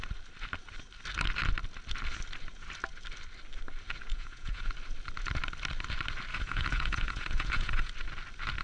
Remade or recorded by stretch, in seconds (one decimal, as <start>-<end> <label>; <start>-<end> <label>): 0.0-4.1 recorded; 4.1-4.7 remade; 4.7-6.3 recorded; 6.3-7.9 remade; 7.9-8.6 recorded